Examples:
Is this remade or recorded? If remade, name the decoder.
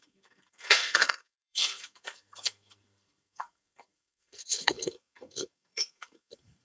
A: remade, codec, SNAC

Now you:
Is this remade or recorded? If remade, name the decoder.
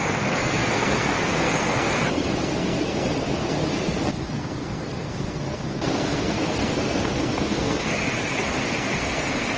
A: remade, codec, SNAC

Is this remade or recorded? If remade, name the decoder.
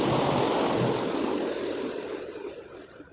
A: recorded